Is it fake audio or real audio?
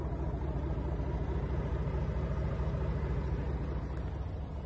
real